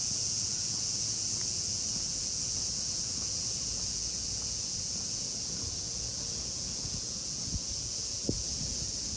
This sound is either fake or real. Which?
fake